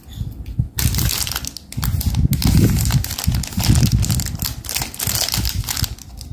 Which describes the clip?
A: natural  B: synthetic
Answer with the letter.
A